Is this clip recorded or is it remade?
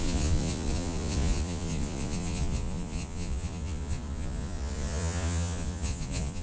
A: remade